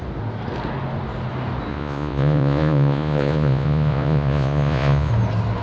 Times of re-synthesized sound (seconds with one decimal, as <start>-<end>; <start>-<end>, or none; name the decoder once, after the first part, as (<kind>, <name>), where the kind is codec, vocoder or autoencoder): 1.7-5.1 (vocoder, Vocos)